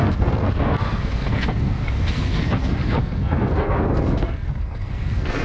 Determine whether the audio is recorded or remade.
remade